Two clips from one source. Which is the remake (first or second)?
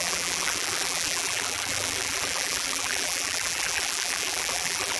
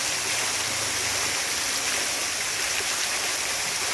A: first